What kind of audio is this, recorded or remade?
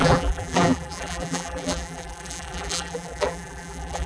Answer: remade